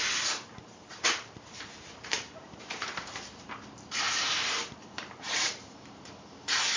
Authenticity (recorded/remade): remade